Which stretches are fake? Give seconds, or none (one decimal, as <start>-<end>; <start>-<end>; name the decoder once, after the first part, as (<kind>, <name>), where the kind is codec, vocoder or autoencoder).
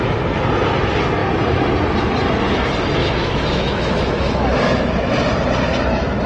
3.0-5.1 (autoencoder, DAC-VAE)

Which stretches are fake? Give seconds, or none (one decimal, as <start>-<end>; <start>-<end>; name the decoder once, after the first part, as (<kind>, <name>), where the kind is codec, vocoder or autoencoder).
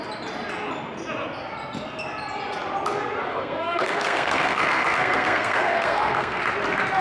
3.3-6.4 (codec, SNAC)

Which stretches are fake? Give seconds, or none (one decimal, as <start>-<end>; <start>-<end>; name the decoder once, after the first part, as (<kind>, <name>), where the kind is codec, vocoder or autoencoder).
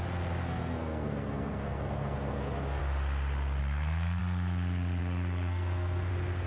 0.4-2.8 (codec, SNAC); 3.6-4.2; 5.0-6.1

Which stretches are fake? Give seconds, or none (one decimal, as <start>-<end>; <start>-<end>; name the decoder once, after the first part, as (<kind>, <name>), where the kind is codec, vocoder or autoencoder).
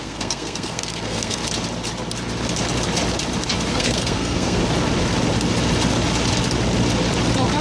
0.0-1.4 (codec, SNAC); 3.7-4.6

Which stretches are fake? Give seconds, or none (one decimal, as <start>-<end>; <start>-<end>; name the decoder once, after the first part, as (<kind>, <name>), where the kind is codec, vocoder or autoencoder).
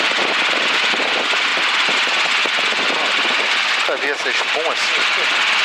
none